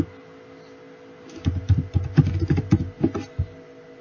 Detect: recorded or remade recorded